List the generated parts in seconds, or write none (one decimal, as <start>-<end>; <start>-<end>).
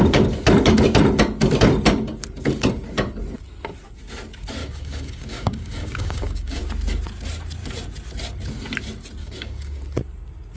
4.6-6.6; 9.2-9.8